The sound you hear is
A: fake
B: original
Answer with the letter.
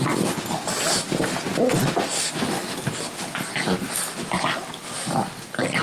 B